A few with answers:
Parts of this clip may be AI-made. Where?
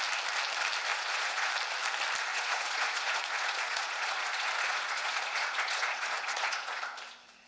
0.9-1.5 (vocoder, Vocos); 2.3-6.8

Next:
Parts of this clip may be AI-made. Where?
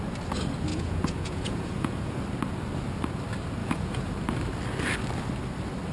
0.7-2.2 (vocoder, Vocos); 3.6-4.1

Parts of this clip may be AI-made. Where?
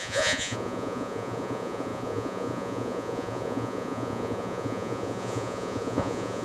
0.0-6.4 (vocoder, Vocos)